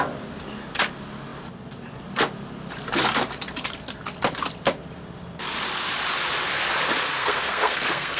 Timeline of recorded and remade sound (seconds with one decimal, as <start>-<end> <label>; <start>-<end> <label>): 0.0-7.2 recorded; 7.2-8.2 remade